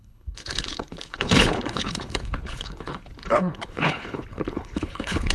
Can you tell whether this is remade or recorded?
remade